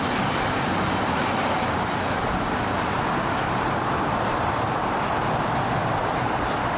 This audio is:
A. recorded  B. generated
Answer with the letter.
B